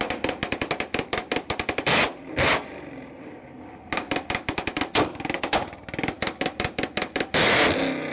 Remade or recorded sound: recorded